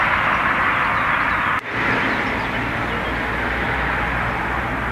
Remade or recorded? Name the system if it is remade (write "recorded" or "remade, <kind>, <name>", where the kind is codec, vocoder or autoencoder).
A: remade, vocoder, BigVGAN v2